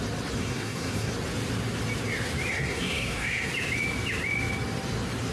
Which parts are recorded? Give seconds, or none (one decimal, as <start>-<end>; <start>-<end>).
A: 0.0-0.4; 1.1-2.5; 3.5-5.3